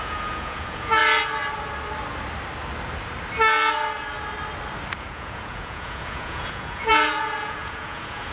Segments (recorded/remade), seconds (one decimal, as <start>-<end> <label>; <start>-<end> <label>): 0.0-1.0 remade; 1.0-5.0 recorded; 5.0-8.3 remade